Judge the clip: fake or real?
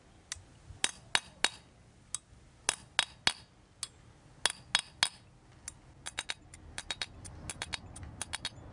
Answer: real